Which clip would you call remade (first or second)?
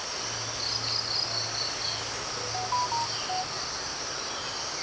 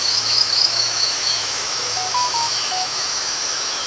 second